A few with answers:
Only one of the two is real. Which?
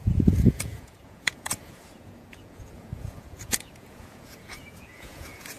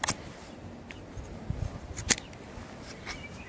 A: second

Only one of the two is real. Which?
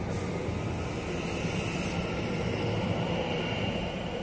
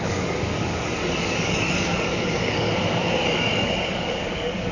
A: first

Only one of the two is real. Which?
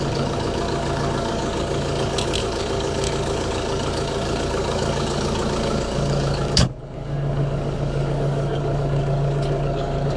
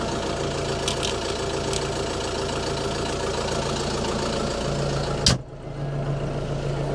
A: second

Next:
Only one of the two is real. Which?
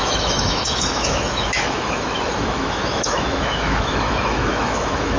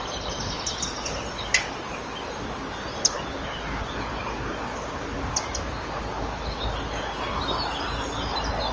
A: second